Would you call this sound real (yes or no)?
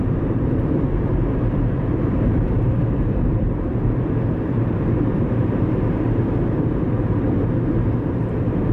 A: no